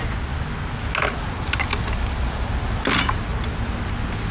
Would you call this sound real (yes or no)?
yes